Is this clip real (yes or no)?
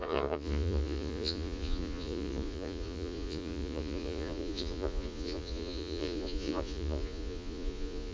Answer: no